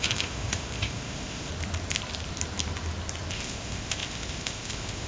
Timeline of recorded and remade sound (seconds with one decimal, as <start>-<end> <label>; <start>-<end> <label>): 0.0-1.5 remade; 1.5-3.3 recorded; 3.3-5.1 remade